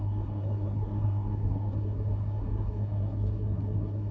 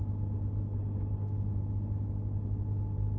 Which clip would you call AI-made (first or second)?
first